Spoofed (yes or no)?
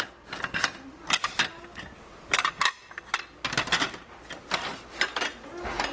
no